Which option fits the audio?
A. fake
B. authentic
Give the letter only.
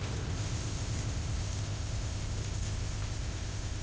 A